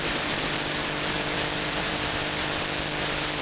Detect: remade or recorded remade